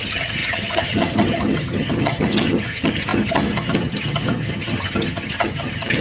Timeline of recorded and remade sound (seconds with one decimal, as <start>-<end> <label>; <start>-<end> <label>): 0.0-6.0 remade